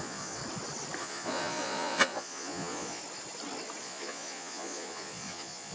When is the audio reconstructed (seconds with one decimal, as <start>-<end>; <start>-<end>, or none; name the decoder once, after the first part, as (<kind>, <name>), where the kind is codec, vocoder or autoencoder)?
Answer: 0.0-0.4 (vocoder, Vocos); 1.0-3.0; 3.8-5.7